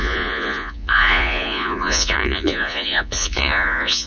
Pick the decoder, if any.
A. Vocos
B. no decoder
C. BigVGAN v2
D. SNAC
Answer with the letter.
A